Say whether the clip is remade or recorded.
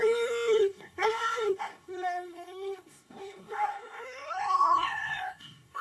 remade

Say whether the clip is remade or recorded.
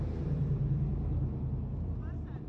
recorded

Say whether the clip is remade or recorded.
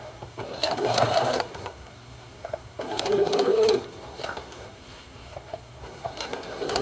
remade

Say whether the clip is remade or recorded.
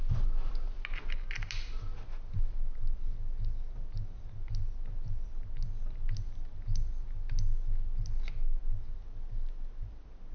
recorded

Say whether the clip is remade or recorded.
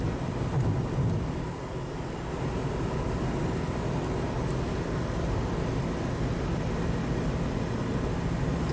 recorded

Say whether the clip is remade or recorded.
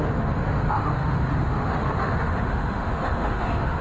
remade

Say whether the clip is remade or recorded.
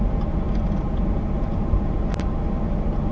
recorded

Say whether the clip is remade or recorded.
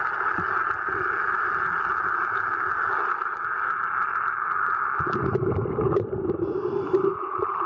remade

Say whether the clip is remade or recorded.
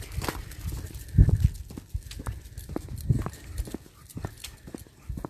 recorded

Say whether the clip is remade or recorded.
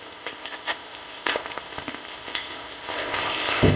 remade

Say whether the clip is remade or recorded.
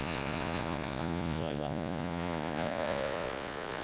remade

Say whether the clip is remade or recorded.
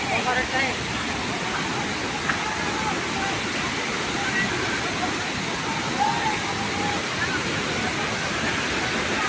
recorded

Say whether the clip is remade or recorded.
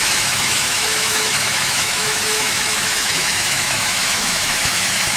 remade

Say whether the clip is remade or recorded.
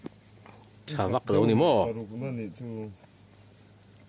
recorded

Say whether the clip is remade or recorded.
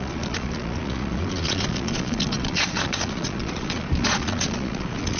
remade